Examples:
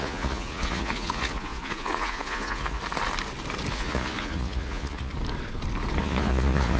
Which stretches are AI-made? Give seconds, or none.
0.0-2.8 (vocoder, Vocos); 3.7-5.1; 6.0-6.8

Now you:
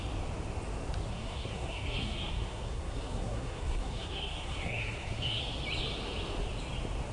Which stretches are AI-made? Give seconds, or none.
1.1-5.4 (codec, SNAC)

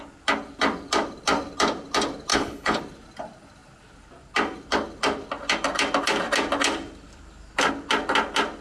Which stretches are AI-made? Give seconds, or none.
2.3-2.8 (codec, HILCodec)

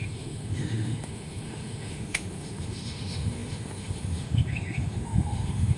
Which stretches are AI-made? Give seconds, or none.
0.0-5.8 (autoencoder, DAC-VAE)

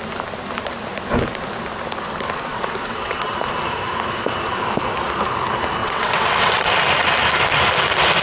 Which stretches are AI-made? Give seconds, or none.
2.5-3.3 (vocoder, WaveNeXt); 5.8-6.7

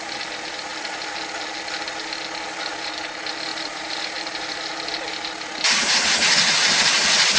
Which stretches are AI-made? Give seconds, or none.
3.5-4.7 (vocoder, BigVGAN v2)

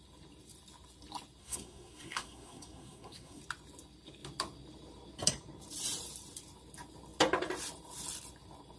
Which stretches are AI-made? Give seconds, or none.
1.4-3.4 (codec, SNAC)

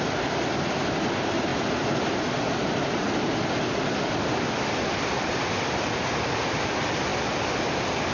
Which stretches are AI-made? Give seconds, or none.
none